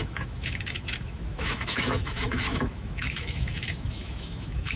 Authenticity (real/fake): fake